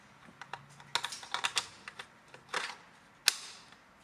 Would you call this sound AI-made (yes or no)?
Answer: no